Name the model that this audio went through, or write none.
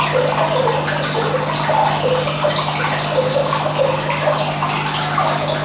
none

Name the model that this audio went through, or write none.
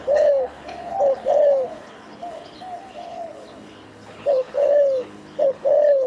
codec, HILCodec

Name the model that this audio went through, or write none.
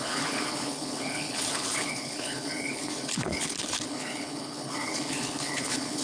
codec, HILCodec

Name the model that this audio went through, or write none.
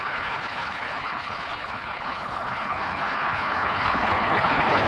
codec, HILCodec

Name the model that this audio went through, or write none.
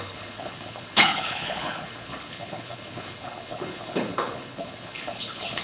codec, HILCodec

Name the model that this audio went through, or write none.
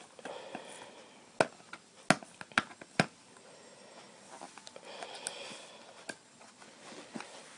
none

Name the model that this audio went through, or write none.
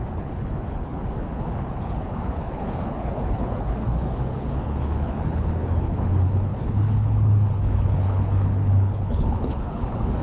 codec, HILCodec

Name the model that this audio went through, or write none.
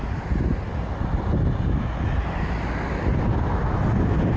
none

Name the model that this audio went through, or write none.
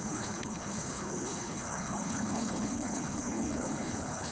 codec, HILCodec